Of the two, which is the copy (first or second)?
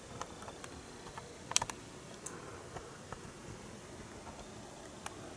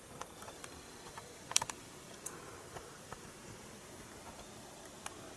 second